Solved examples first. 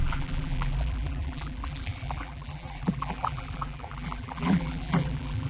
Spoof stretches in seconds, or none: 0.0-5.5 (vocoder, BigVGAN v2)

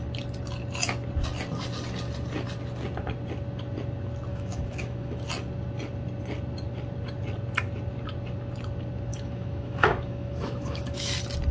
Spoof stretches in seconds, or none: 4.3-5.3 (autoencoder, DAC-VAE); 9.1-11.1

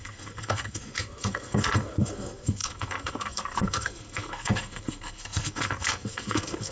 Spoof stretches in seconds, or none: 0.0-6.7 (codec, SNAC)

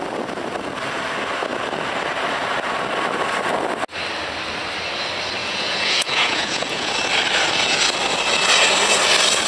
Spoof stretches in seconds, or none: 5.4-6.9 (vocoder, Vocos)

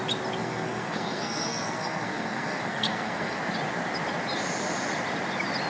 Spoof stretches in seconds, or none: 0.4-3.4 (codec, SNAC)